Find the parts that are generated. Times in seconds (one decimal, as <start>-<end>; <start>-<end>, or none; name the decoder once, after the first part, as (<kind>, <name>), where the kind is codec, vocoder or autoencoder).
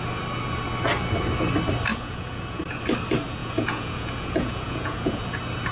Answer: 1.9-2.8 (vocoder, Vocos); 3.4-5.2